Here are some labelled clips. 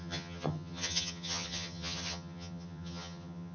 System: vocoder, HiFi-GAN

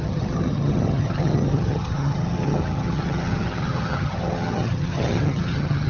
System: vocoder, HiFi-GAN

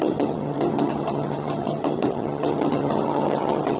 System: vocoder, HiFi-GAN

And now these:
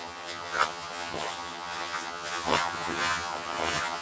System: vocoder, HiFi-GAN